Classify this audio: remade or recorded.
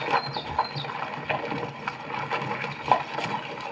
recorded